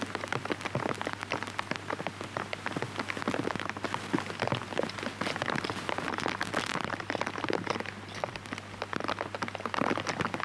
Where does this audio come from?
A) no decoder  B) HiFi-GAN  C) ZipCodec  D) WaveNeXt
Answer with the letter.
A